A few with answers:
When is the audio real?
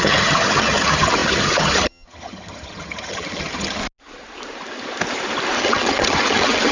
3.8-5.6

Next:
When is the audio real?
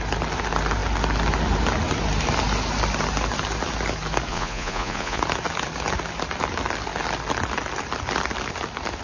0.0-4.3; 5.2-9.0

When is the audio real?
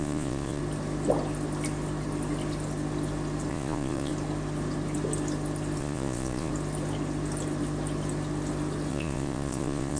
0.6-3.5; 4.1-5.8; 6.5-8.9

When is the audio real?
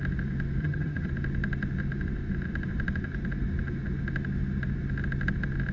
0.0-0.6; 1.1-5.7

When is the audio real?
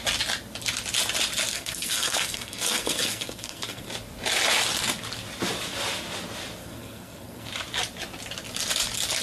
0.0-1.5; 3.9-6.6; 7.5-9.2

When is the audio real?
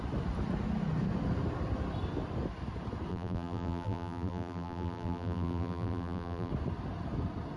0.0-3.1; 6.5-7.6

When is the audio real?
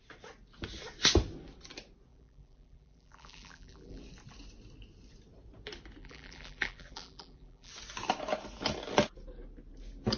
0.0-2.1; 4.0-6.0; 7.7-10.2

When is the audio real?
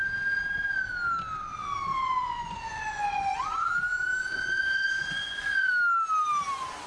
0.0-1.9; 3.7-4.2; 5.7-6.9